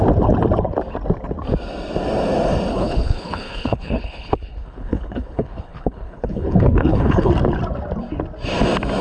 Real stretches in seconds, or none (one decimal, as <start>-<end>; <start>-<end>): 0.0-2.7; 7.3-9.0